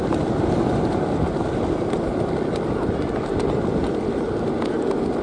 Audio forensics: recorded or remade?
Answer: recorded